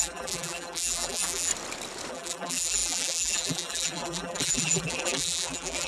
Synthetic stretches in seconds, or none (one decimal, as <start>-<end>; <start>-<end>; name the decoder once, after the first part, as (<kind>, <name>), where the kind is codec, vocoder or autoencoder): 0.0-1.5 (vocoder, BigVGAN v2); 2.1-5.9